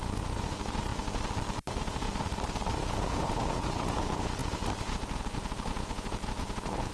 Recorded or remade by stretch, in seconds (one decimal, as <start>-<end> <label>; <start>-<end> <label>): 0.0-0.9 remade; 0.9-1.7 recorded; 1.7-2.1 remade; 2.1-2.8 recorded; 2.8-6.9 remade